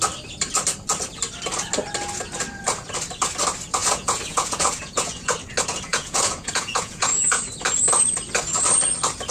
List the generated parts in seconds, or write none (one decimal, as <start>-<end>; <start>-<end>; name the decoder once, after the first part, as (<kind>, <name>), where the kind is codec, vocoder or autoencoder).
3.8-5.3 (vocoder, Vocos); 5.9-7.4